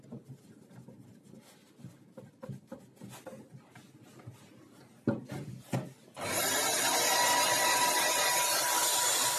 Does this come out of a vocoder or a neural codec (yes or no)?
no